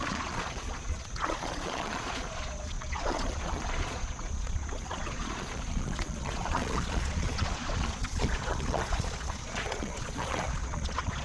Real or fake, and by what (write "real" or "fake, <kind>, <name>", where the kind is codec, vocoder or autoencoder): fake, vocoder, Vocos